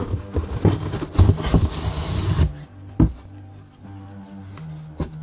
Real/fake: real